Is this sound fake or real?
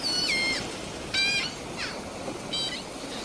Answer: real